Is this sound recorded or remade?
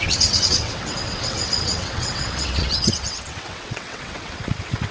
remade